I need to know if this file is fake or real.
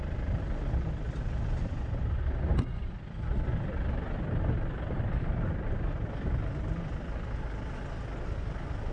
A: real